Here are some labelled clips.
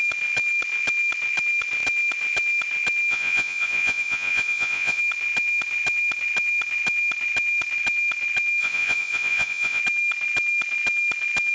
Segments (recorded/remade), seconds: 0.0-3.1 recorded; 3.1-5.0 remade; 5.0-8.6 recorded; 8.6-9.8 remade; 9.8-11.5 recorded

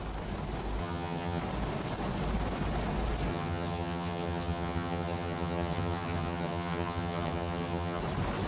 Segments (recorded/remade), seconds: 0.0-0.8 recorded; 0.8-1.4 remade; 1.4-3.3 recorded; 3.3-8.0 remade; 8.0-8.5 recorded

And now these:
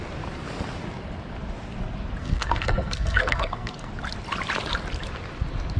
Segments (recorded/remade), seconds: 0.0-2.2 recorded; 2.2-3.9 remade; 3.9-5.8 recorded

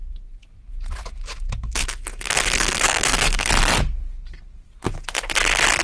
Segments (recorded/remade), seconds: 0.0-1.8 recorded; 1.8-3.5 remade; 3.5-5.8 recorded